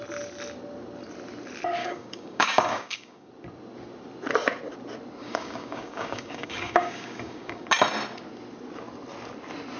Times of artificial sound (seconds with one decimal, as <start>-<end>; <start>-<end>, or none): 1.8-3.3; 5.2-7.7